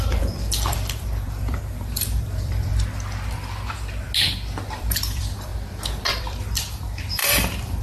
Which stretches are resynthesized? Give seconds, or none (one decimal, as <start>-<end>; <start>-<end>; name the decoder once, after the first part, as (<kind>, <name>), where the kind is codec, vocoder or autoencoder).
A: 0.0-2.7 (vocoder, BigVGAN v2); 4.8-5.5; 6.1-7.8